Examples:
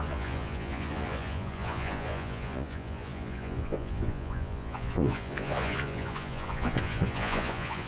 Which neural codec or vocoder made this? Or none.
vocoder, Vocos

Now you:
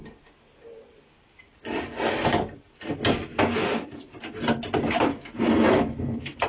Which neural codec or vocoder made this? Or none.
none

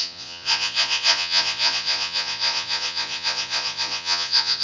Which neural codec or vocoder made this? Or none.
vocoder, Vocos